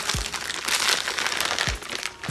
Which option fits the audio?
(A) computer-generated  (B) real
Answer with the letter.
B